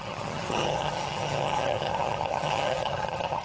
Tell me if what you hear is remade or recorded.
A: remade